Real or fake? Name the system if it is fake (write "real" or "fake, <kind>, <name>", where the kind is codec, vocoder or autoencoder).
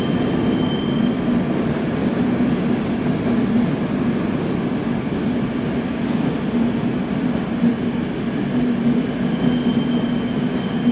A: real